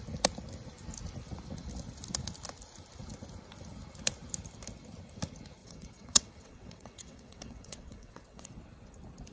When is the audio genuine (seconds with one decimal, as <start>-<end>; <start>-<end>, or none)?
0.0-5.6; 8.6-9.3